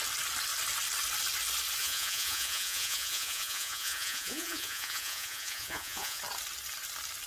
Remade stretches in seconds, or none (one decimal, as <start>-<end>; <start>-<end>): 1.8-6.2